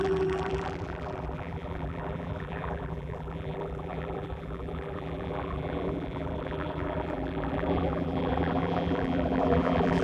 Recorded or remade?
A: remade